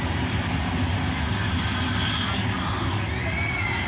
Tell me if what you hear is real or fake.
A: real